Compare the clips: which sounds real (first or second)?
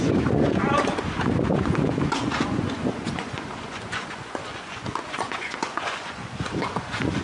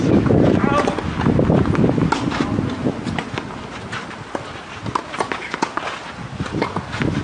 second